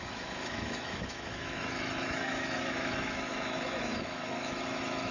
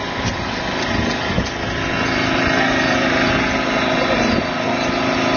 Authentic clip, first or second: second